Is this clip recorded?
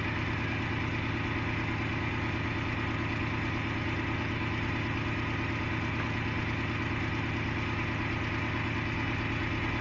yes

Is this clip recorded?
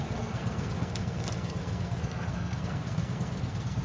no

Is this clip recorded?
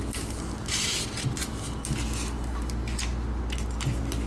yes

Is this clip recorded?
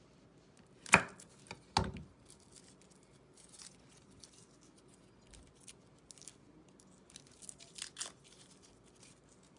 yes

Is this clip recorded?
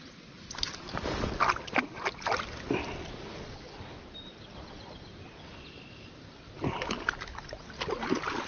yes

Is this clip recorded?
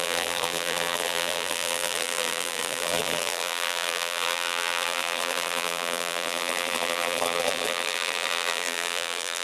no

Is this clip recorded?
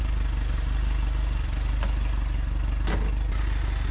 yes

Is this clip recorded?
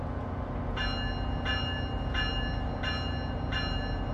yes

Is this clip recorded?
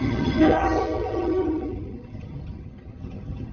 no